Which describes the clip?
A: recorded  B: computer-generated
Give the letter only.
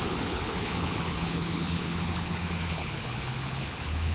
B